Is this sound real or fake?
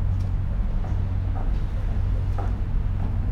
real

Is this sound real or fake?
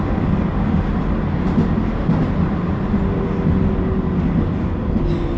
real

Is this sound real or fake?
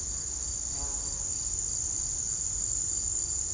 real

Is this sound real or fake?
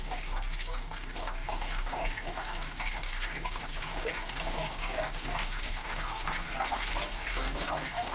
fake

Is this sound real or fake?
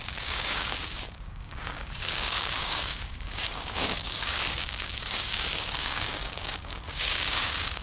fake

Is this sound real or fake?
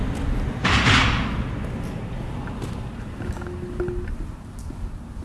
real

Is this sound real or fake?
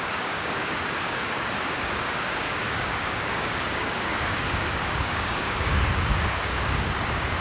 fake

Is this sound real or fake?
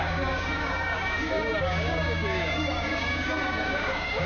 fake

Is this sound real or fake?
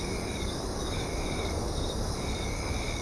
fake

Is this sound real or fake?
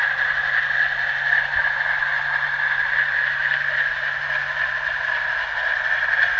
real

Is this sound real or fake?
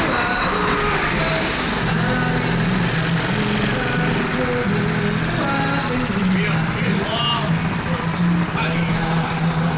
real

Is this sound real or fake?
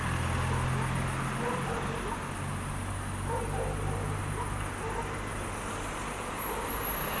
real